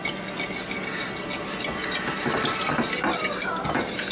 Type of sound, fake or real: real